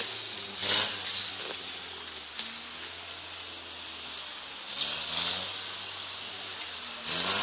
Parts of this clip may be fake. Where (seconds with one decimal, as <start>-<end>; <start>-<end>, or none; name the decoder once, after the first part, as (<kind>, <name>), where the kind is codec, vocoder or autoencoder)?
none